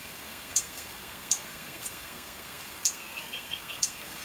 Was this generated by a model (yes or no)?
yes